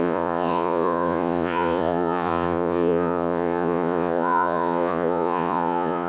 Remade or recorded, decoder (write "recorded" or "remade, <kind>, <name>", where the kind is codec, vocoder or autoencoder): remade, vocoder, Vocos